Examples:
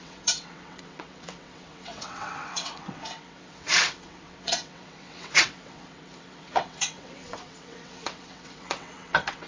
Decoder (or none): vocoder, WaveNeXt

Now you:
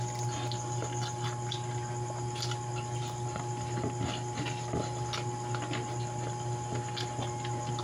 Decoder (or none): none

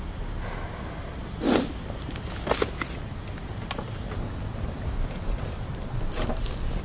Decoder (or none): none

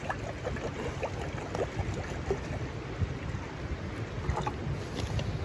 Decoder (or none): none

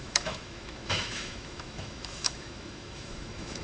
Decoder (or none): autoencoder, DAC-VAE